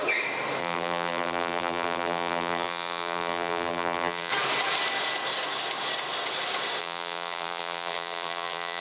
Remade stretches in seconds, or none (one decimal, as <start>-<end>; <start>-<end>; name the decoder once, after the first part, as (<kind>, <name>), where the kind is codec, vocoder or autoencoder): 0.6-4.3 (vocoder, BigVGAN v2); 6.8-8.8